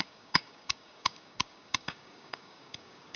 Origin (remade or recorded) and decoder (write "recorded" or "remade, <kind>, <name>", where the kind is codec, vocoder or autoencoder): remade, codec, DAC